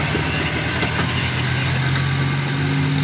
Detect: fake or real real